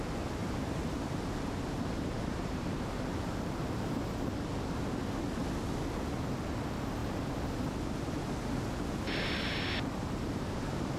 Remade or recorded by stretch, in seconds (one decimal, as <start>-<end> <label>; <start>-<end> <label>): 0.0-0.4 recorded; 0.4-4.1 remade; 4.1-10.0 recorded; 10.0-11.0 remade